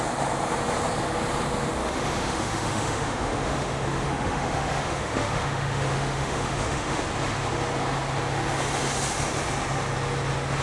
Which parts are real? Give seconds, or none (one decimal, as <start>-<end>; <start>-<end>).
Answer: 0.0-1.8; 7.0-10.6